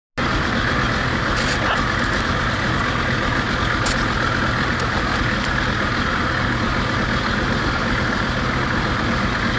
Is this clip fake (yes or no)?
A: no